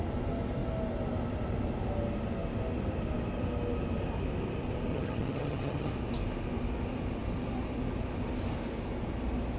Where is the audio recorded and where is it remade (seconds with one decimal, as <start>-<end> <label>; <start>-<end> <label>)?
0.0-4.9 recorded; 4.9-5.9 remade; 5.9-9.6 recorded